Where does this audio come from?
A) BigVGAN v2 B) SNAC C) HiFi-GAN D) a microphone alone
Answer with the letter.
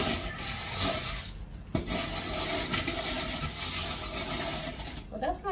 D